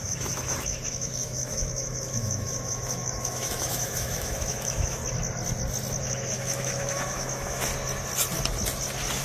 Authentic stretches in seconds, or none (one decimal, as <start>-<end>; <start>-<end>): 5.0-6.0; 7.7-9.2